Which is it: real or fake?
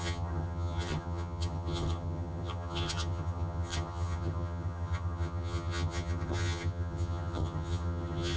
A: fake